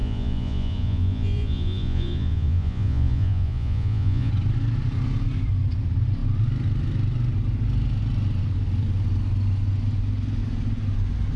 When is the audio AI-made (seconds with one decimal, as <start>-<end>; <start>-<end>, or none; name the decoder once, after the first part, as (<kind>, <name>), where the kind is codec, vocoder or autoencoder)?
0.0-4.3 (vocoder, Vocos)